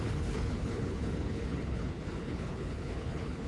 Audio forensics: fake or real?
fake